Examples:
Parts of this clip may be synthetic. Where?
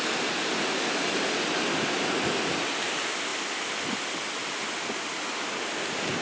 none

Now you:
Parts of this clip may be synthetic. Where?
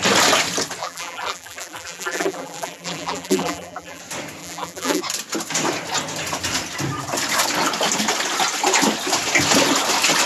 0.8-4.0 (vocoder, BigVGAN v2); 4.4-5.0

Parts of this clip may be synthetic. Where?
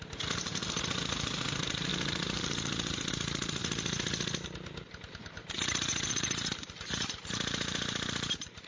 0.0-3.6 (vocoder, BigVGAN v2); 5.0-5.4; 6.1-8.7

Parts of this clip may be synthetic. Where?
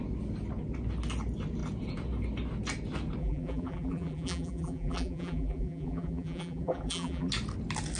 3.2-7.3 (vocoder, BigVGAN v2)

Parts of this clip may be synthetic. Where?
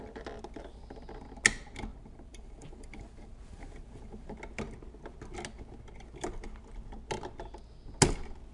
1.9-4.4 (vocoder, BigVGAN v2)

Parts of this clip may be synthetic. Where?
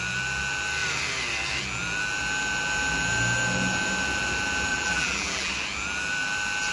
4.7-5.5 (vocoder, BigVGAN v2)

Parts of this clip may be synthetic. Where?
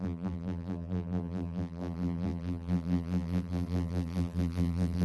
0.0-5.0 (vocoder, BigVGAN v2)